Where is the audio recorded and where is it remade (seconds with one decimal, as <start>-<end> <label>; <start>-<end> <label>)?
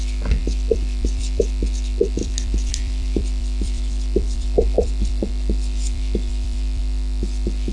0.0-0.4 recorded; 0.4-1.4 remade; 1.4-2.2 recorded; 2.2-6.8 remade; 6.8-7.7 recorded